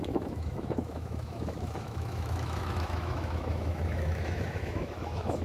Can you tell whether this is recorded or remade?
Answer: remade